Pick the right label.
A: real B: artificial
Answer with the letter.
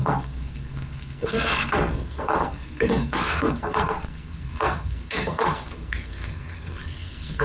B